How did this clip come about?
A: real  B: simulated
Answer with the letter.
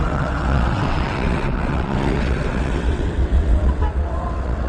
B